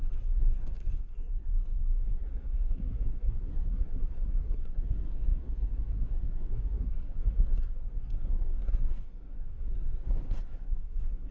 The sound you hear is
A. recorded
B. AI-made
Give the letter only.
B